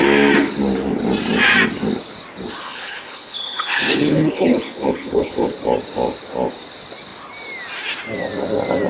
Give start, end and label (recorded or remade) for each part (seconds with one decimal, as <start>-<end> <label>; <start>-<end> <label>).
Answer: 0.0-2.6 recorded; 2.6-5.5 remade; 5.5-8.9 recorded